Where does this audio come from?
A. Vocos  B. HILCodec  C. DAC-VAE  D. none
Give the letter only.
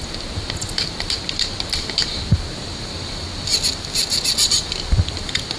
D